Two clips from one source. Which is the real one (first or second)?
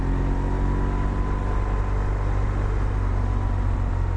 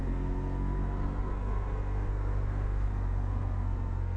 first